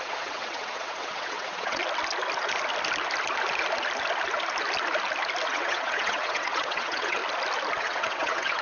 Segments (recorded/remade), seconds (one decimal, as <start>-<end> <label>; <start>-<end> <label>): 0.0-1.8 remade; 1.8-5.5 recorded; 5.5-7.2 remade; 7.2-7.8 recorded; 7.8-8.6 remade